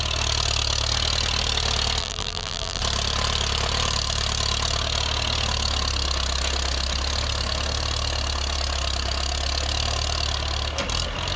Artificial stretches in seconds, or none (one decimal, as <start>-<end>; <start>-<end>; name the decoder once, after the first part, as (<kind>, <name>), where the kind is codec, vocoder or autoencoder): 2.0-2.8 (vocoder, BigVGAN v2)